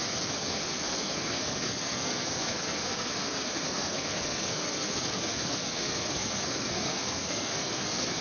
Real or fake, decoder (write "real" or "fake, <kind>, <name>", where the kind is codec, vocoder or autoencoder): fake, codec, SNAC